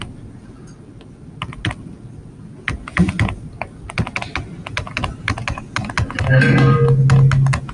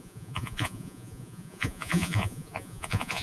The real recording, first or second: first